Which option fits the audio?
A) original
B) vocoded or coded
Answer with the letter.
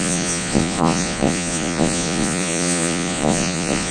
B